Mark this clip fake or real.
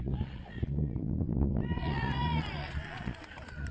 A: fake